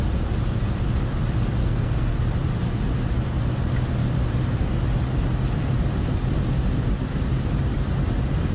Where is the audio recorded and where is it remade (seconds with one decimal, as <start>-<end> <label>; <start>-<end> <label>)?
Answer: 0.0-1.6 recorded; 1.6-2.2 remade; 2.2-8.5 recorded